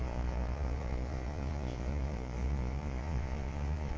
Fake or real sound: fake